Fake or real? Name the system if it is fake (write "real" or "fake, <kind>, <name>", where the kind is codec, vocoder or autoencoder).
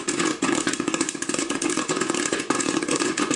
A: fake, vocoder, Vocos